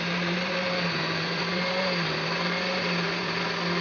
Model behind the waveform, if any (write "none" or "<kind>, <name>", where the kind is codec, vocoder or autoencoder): vocoder, BigVGAN v2